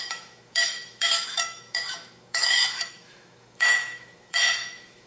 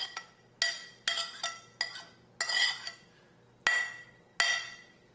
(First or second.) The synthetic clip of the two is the first